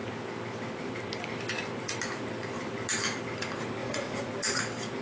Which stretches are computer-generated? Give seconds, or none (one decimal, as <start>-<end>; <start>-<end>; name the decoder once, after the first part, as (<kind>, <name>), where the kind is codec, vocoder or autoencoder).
3.8-4.3 (vocoder, Vocos)